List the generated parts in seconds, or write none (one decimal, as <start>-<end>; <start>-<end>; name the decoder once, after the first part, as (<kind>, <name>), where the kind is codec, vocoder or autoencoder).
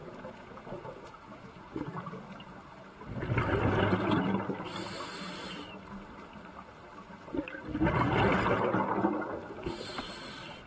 0.0-2.2 (vocoder, Vocos)